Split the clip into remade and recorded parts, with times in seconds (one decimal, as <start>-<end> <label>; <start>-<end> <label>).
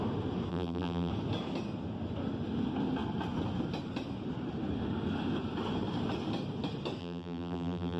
0.0-0.5 recorded; 0.5-1.1 remade; 1.1-7.0 recorded; 7.0-8.0 remade